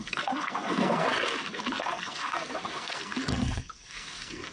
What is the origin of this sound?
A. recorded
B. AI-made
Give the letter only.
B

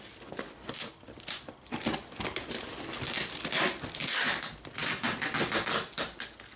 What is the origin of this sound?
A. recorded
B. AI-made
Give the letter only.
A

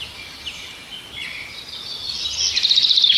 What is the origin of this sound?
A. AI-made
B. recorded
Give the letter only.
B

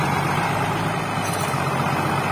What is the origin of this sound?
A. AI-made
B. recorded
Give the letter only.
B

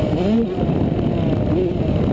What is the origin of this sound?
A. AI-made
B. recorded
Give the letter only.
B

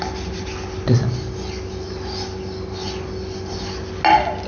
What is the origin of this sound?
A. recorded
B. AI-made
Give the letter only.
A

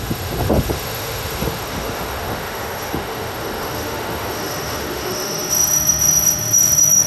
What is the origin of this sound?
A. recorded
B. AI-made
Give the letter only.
B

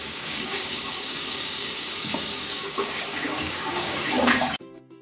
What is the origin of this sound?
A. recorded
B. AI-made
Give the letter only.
B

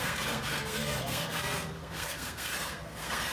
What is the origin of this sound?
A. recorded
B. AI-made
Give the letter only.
B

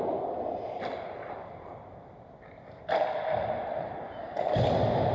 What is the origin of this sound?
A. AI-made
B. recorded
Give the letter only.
B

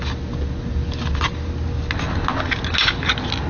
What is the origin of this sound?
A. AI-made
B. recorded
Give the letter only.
B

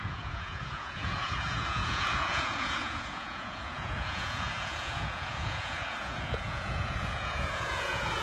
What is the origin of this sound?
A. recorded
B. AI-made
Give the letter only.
B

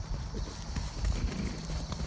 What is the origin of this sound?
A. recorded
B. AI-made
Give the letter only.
A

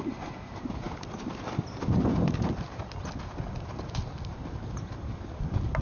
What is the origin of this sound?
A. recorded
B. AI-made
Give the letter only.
A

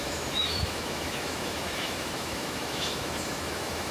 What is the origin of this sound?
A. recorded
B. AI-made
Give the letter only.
B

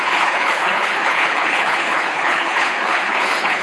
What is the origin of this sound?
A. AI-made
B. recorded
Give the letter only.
A